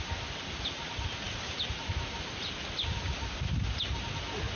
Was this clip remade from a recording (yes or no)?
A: no